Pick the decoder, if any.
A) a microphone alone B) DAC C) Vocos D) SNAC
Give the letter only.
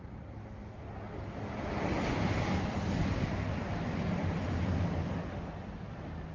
A